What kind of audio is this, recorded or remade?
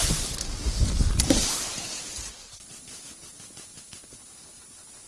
recorded